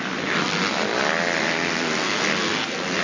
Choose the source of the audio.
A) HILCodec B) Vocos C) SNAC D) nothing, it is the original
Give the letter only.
D